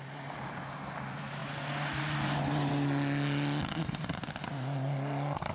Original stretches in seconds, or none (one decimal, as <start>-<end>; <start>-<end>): 0.0-5.5